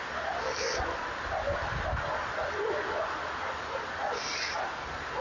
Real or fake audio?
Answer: real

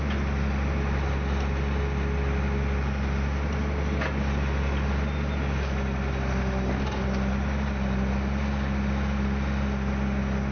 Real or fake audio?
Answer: real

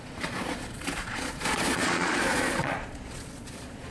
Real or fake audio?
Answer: fake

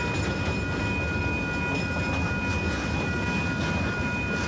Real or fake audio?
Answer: real